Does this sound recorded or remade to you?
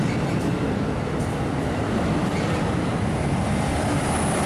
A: recorded